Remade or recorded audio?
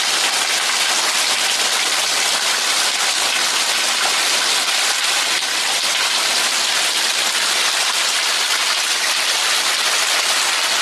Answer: recorded